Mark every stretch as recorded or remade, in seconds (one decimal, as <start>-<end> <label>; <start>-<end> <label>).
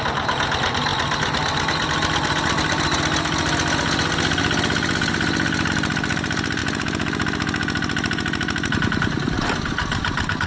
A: 0.0-10.5 recorded